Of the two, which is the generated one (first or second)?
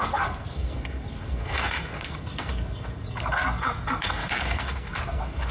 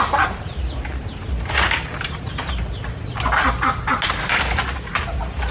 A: first